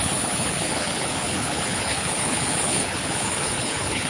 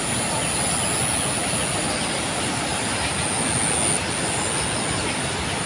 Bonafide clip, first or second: second